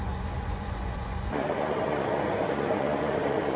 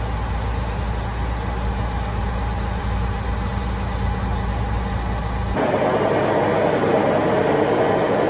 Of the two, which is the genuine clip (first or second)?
second